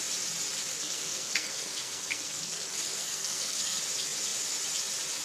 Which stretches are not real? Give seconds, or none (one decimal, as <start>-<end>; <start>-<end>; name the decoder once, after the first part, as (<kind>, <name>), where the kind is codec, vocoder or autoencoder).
0.7-3.8 (codec, SNAC)